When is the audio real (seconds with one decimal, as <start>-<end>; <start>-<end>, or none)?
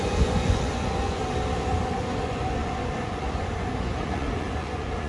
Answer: 1.2-1.8